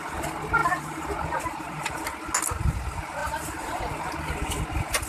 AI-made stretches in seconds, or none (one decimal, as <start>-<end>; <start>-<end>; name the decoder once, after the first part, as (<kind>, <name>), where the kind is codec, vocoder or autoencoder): 0.6-2.0 (vocoder, BigVGAN v2); 3.2-4.1